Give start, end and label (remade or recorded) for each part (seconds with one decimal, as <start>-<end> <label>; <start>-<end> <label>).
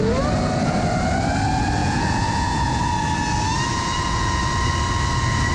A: 0.0-1.8 recorded; 1.8-2.8 remade; 2.8-3.7 recorded; 3.7-4.4 remade; 4.4-5.5 recorded